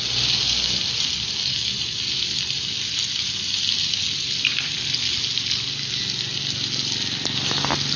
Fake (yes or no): no